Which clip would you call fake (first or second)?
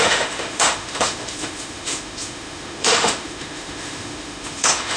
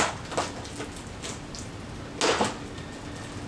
first